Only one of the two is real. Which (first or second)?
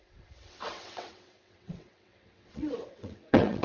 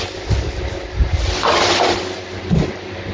second